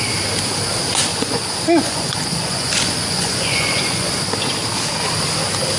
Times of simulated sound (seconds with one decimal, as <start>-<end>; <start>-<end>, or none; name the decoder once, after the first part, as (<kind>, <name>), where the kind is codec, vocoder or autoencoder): 1.1-4.1 (vocoder, Vocos)